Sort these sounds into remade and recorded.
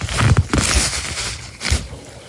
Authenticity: recorded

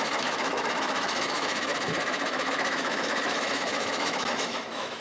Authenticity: remade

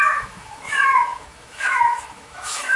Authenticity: remade